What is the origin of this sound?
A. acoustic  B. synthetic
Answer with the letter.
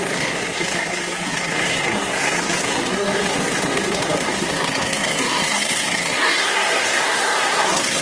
B